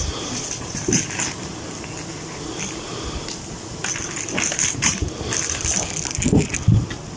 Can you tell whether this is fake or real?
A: real